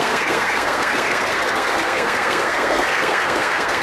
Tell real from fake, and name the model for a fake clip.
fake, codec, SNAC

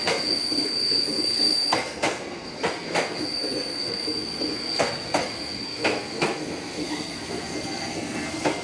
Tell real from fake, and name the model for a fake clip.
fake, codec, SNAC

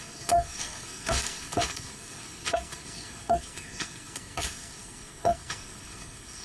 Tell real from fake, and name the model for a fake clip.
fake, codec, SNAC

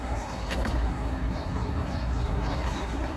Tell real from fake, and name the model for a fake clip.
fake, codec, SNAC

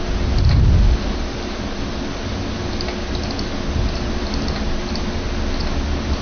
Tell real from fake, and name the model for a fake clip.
real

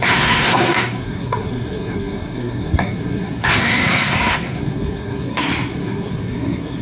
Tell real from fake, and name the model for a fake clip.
fake, codec, SNAC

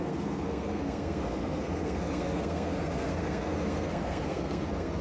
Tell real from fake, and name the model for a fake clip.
fake, codec, SNAC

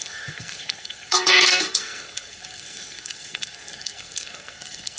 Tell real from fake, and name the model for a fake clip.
fake, codec, SNAC